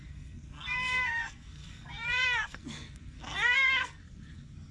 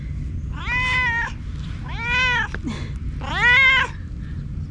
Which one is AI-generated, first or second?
first